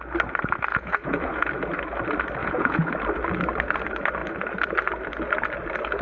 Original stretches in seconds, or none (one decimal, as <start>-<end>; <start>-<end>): 0.0-0.7; 1.5-2.4; 2.9-6.0